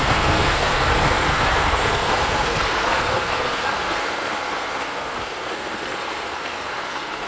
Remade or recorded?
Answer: remade